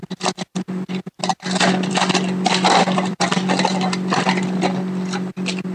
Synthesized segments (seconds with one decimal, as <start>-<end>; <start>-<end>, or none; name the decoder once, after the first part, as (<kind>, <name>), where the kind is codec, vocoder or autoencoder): 2.8-4.4 (vocoder, BigVGAN v2)